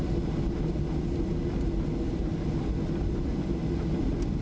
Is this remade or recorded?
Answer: recorded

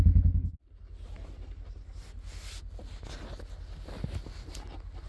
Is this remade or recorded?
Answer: recorded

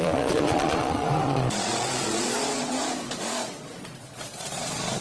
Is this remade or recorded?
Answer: remade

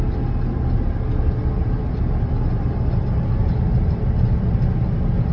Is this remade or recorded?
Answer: recorded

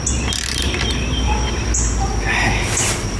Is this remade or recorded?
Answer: recorded